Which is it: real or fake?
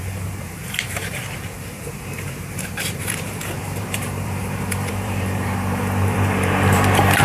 fake